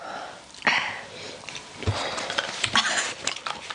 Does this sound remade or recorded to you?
recorded